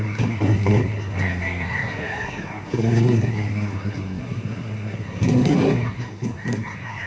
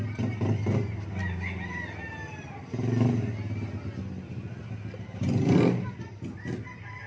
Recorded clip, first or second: second